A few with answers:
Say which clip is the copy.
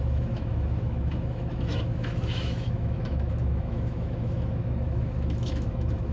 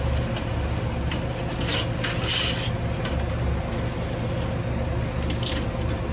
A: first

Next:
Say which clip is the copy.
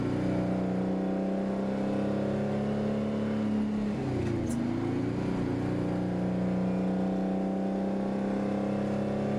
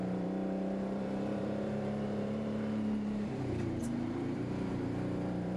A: second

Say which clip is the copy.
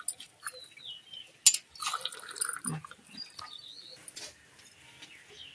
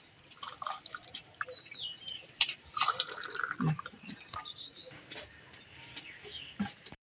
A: second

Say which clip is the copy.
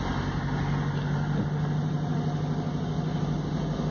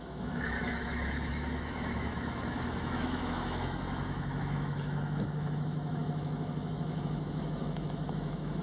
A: second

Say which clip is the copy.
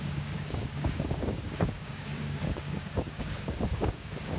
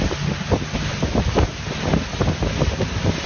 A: first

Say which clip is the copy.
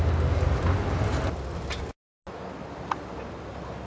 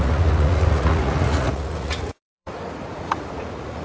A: second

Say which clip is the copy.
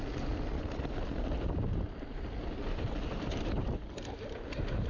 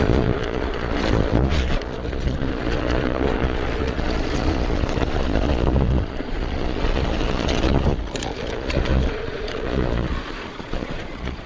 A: second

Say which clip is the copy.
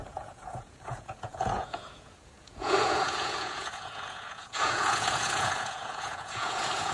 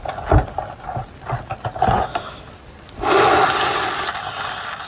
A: first